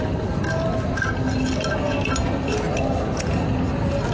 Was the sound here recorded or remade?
recorded